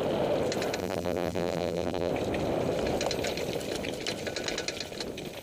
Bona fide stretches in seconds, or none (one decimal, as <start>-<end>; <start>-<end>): 0.0-0.8; 2.1-5.4